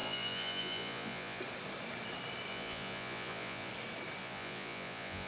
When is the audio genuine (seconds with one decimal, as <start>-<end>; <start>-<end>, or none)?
1.4-2.5; 3.7-4.2